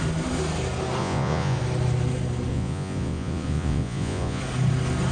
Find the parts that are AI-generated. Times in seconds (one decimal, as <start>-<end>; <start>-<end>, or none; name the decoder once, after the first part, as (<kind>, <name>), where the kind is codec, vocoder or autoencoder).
1.0-1.6 (vocoder, Vocos); 2.5-4.4